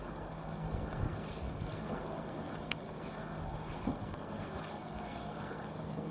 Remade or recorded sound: remade